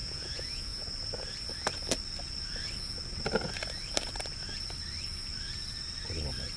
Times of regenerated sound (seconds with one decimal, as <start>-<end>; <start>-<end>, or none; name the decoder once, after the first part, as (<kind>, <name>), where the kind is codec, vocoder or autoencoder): 0.0-0.9 (vocoder, Vocos)